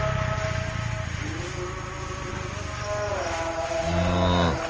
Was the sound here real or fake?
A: real